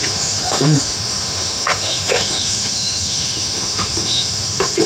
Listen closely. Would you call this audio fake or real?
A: fake